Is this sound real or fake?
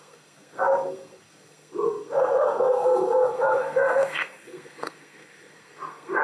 fake